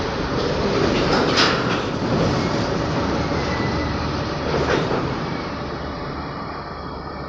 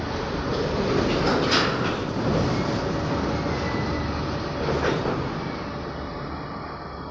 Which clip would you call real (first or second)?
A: second